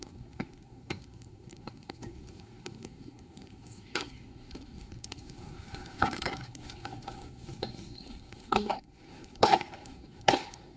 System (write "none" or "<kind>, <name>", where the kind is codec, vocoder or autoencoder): codec, SNAC